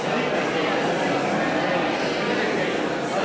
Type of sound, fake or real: real